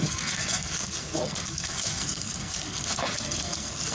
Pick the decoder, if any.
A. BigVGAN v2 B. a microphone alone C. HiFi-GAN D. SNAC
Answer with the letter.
D